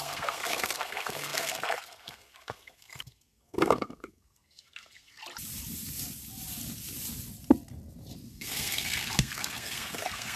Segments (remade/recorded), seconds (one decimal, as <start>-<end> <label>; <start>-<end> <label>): 0.0-5.2 remade; 5.2-8.3 recorded; 8.3-10.4 remade

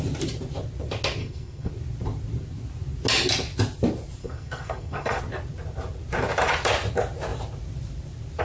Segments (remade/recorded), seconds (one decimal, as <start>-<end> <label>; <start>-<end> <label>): 0.0-1.2 recorded; 1.2-1.7 remade; 1.7-4.2 recorded; 4.2-5.2 remade; 5.2-8.4 recorded